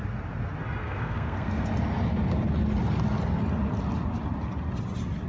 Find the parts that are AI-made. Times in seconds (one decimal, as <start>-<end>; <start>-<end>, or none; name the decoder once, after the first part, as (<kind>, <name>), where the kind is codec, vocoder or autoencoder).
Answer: 0.8-1.7 (codec, SNAC)